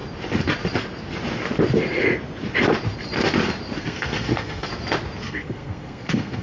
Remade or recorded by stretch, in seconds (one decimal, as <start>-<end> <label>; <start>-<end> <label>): 0.0-3.8 recorded; 3.8-4.7 remade; 4.7-5.2 recorded; 5.2-6.4 remade

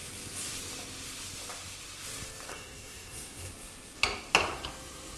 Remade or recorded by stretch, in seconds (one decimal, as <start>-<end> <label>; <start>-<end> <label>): 0.0-2.5 recorded; 2.5-3.5 remade; 3.5-5.2 recorded

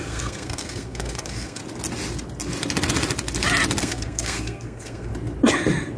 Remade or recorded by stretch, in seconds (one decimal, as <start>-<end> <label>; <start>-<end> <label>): 0.0-1.6 remade; 1.6-3.8 recorded; 3.8-5.1 remade; 5.1-6.0 recorded

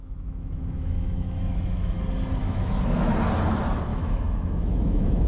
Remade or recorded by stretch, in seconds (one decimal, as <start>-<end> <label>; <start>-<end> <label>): 0.0-2.0 remade; 2.0-2.4 recorded; 2.4-3.1 remade; 3.1-3.9 recorded; 3.9-5.3 remade

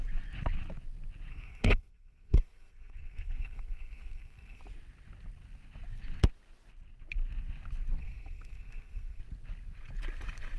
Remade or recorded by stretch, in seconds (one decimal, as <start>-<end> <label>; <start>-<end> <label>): 0.0-1.3 recorded; 1.3-4.6 remade; 4.6-8.0 recorded; 8.0-9.2 remade; 9.2-10.6 recorded